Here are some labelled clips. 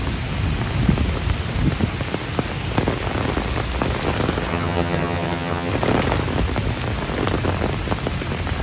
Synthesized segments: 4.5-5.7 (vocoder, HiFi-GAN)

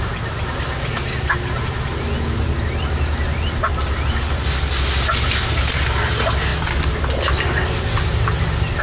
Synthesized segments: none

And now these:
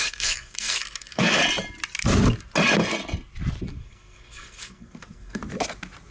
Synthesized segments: 0.0-1.4 (codec, SNAC); 3.7-5.4